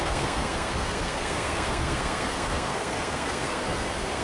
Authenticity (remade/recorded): remade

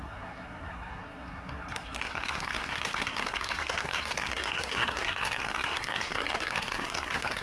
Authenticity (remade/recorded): remade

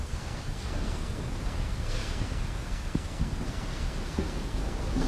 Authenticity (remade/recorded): remade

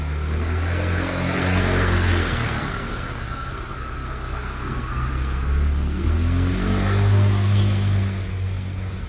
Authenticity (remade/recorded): remade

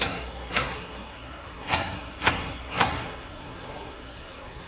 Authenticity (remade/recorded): remade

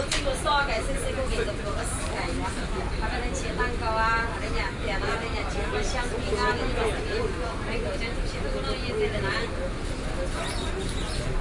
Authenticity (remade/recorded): recorded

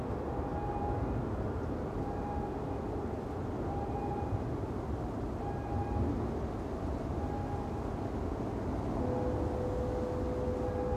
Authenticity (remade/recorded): recorded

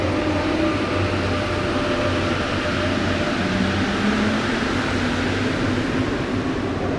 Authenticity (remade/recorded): recorded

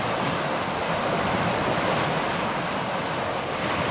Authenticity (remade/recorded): recorded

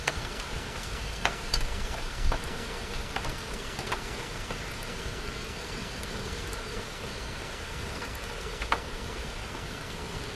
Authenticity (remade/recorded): remade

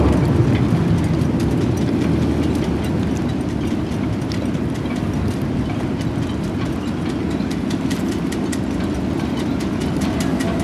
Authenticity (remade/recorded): recorded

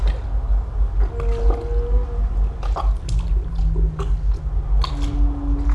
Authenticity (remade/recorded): recorded